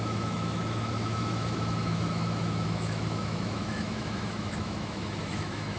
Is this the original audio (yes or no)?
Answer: no